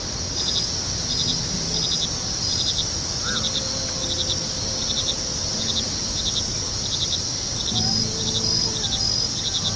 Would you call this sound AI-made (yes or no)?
no